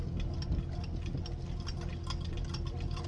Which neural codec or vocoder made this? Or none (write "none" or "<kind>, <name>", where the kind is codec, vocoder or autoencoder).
none